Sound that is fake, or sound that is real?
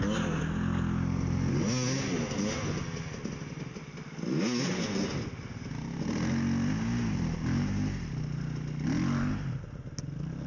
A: real